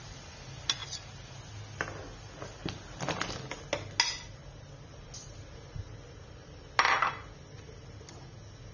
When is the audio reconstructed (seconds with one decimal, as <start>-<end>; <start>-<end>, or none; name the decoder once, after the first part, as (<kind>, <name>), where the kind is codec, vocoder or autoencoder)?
none